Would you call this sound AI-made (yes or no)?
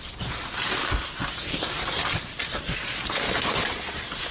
no